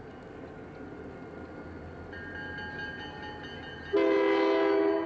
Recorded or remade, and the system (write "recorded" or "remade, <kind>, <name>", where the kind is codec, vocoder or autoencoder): recorded